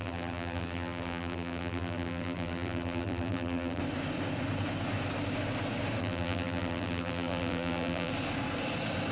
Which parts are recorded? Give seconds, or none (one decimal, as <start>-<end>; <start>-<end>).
3.8-6.0; 8.1-9.1